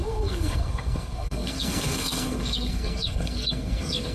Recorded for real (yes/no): no